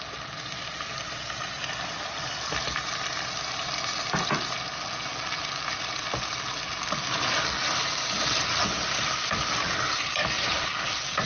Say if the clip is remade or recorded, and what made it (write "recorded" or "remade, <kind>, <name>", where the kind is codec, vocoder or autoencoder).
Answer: recorded